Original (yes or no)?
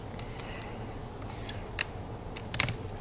yes